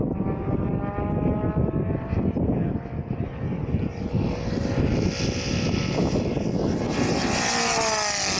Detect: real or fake real